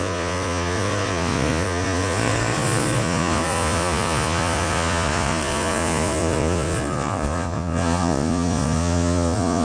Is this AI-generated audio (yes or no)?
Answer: yes